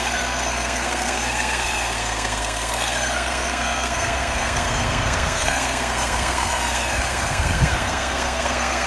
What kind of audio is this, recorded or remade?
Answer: remade